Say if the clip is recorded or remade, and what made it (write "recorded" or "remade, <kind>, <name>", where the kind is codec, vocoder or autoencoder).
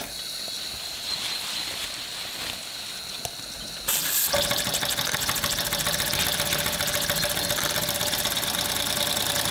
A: recorded